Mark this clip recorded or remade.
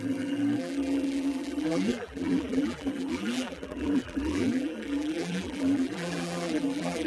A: remade